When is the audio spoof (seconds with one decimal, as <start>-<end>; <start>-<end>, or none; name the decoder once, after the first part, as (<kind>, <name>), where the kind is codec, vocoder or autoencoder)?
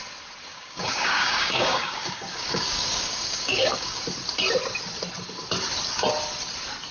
0.5-4.0 (codec, DAC)